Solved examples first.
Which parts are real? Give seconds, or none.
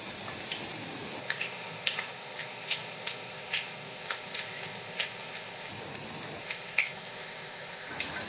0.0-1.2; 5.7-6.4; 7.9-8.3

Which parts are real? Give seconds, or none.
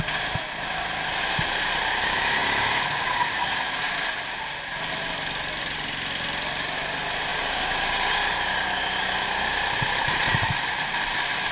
0.0-11.5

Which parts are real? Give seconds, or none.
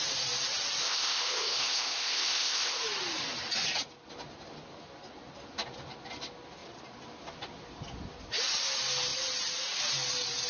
0.0-0.8; 2.8-10.5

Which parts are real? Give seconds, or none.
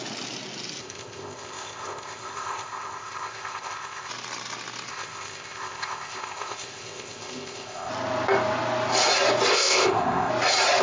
0.0-0.8; 4.1-4.9; 7.9-9.5; 10.3-10.8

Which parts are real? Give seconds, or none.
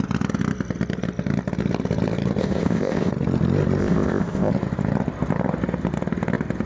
0.0-2.4; 3.1-3.8; 4.5-6.7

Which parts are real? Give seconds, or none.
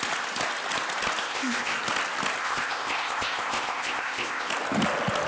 0.0-1.2; 1.8-2.4; 4.5-5.3